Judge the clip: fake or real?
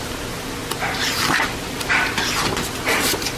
real